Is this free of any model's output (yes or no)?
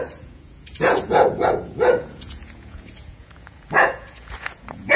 no